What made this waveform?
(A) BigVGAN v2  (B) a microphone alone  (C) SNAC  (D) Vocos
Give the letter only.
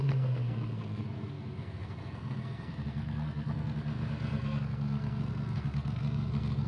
C